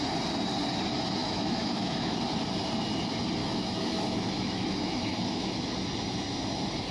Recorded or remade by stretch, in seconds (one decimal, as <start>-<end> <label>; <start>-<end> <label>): 0.0-1.2 recorded; 1.2-2.2 remade; 2.2-3.4 recorded; 3.4-5.5 remade; 5.5-6.9 recorded

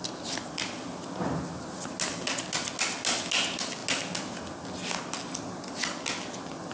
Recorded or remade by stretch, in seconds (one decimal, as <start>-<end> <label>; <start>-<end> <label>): 0.0-6.7 recorded

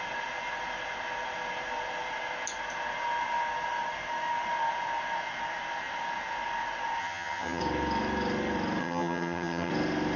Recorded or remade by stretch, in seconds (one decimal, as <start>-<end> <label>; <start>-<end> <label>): 0.0-7.0 recorded; 7.0-7.6 remade; 7.6-8.8 recorded; 8.8-9.7 remade; 9.7-10.2 recorded